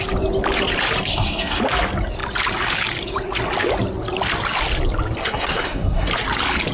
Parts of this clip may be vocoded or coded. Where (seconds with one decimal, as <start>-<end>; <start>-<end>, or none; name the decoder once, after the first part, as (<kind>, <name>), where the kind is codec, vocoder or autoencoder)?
1.1-1.6 (codec, SNAC); 5.2-6.1